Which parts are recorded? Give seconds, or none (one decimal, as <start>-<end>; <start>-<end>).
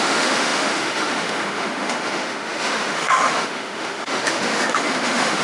none